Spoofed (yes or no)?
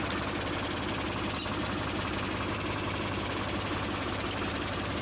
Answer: no